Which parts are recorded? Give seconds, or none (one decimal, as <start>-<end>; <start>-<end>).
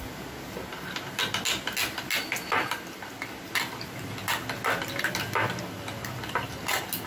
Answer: 0.0-7.1